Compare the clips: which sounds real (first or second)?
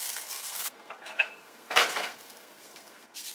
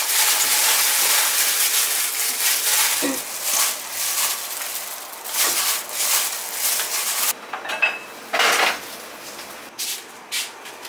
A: second